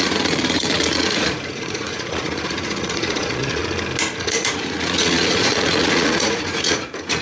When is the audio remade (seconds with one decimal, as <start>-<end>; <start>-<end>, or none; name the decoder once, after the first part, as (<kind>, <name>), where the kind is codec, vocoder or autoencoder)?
0.0-3.6 (vocoder, Vocos); 4.2-7.2

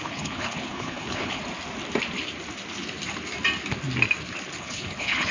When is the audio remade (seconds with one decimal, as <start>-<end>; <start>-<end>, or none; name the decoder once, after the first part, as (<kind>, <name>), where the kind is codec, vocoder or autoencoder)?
0.0-1.4 (codec, HILCodec); 4.6-5.3

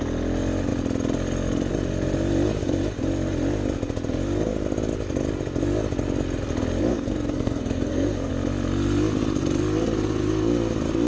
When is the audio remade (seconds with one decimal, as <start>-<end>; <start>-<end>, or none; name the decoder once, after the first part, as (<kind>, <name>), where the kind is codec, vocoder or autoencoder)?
6.9-8.3 (codec, SNAC)

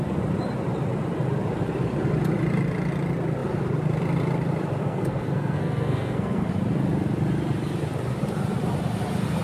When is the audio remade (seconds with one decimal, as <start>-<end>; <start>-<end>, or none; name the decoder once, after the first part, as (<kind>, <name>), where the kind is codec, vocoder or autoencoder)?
4.8-6.5 (codec, SNAC)

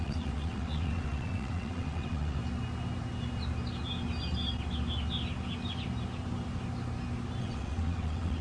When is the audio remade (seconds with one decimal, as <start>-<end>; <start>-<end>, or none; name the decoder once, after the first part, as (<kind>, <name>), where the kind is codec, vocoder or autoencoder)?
0.0-2.4 (vocoder, WaveNeXt); 7.4-8.4